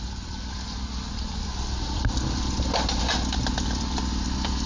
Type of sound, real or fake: real